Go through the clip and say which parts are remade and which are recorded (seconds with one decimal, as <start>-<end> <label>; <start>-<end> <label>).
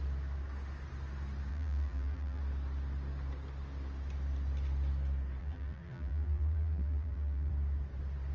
0.0-1.5 recorded; 1.5-2.4 remade; 2.4-5.4 recorded; 5.4-7.5 remade; 7.5-8.3 recorded